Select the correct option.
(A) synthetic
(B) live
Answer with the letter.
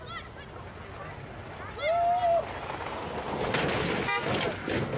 B